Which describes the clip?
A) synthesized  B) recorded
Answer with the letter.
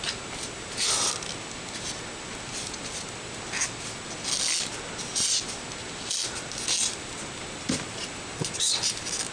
B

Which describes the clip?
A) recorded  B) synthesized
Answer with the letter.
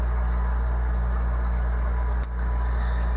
A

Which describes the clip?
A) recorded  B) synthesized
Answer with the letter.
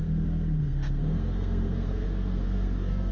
B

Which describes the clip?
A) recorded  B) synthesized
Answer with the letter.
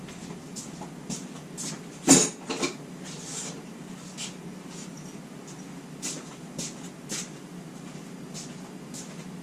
A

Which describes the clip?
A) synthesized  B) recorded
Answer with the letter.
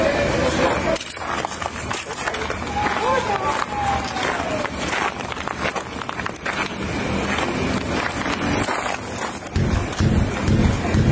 B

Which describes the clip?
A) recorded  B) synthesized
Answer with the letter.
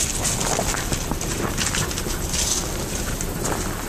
A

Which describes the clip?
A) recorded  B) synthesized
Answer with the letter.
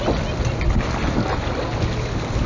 A